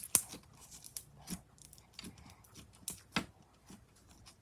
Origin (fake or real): real